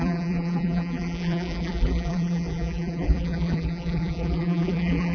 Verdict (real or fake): fake